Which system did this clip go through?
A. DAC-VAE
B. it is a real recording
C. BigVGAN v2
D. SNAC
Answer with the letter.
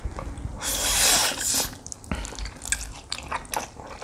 B